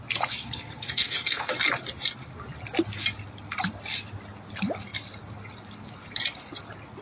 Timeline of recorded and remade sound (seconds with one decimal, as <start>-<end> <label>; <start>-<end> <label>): 0.0-0.4 recorded; 0.4-1.5 remade; 1.5-7.0 recorded